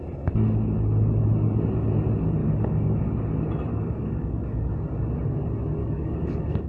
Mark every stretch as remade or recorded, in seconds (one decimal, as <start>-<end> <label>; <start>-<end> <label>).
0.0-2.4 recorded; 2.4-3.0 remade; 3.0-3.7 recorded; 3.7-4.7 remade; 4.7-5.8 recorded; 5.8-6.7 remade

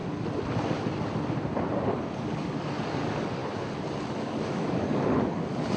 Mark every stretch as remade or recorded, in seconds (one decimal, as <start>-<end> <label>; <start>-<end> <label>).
0.0-1.8 recorded; 1.8-3.4 remade; 3.4-4.1 recorded; 4.1-5.8 remade

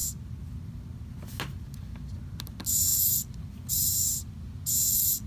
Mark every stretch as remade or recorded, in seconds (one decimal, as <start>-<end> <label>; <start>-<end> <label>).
0.0-5.3 recorded

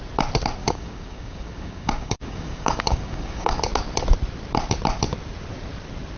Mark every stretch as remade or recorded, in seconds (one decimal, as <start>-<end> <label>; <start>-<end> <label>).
0.0-0.6 recorded; 0.6-3.6 remade; 3.6-6.2 recorded

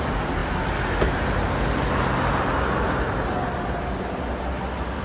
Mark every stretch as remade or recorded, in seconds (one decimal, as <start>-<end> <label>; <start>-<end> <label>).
0.0-5.0 recorded

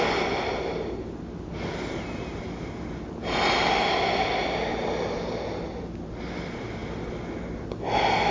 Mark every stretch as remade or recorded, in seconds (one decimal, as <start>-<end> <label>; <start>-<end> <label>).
0.0-8.3 recorded

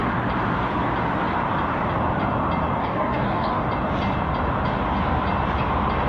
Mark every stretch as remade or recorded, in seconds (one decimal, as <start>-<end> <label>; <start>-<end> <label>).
0.0-2.8 recorded; 2.8-3.6 remade; 3.6-6.1 recorded

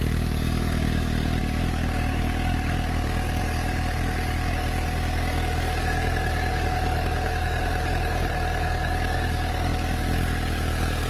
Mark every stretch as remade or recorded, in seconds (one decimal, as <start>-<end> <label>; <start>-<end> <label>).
0.0-11.1 remade